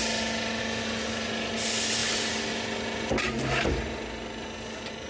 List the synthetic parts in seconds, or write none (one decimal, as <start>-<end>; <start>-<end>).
none